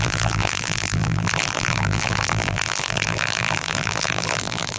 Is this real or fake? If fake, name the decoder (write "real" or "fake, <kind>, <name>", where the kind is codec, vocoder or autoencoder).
fake, vocoder, BigVGAN v2